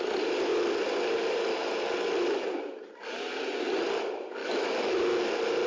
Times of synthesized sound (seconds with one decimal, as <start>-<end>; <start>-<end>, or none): 4.4-5.2